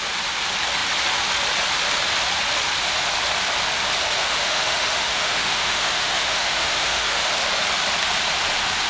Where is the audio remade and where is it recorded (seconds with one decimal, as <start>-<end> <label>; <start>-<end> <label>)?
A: 0.0-4.2 recorded; 4.2-7.3 remade; 7.3-8.9 recorded